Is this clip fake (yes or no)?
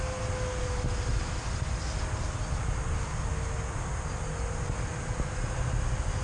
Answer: no